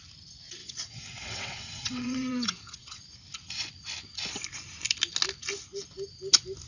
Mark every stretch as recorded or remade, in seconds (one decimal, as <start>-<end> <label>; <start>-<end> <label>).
0.0-0.6 recorded; 0.6-3.0 remade; 3.0-6.7 recorded